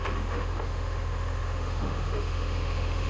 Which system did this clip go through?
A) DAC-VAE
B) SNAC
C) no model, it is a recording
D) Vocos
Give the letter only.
A